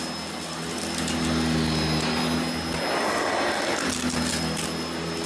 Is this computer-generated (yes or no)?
no